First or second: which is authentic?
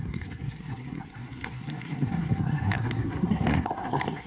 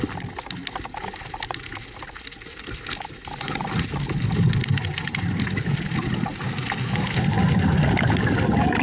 second